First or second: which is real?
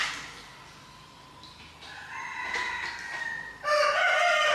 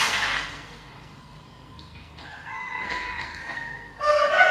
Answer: first